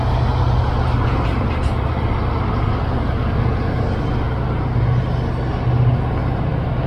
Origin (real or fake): real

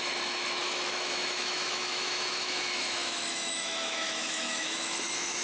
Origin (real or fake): fake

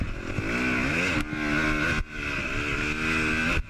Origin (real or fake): real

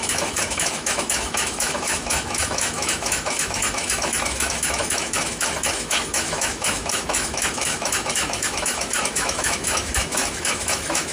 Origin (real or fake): fake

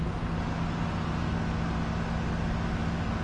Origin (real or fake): real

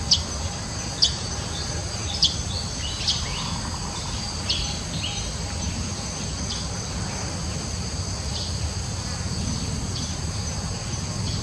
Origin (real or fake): real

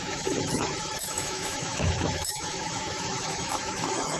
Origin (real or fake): fake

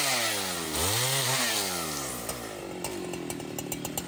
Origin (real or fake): real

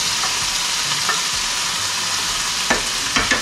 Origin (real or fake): real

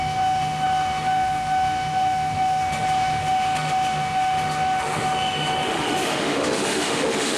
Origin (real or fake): fake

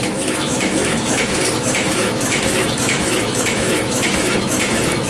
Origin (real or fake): fake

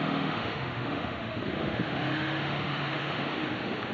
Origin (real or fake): fake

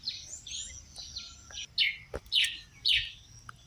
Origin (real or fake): real